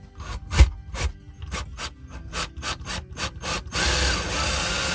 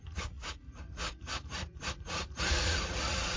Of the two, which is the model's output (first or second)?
second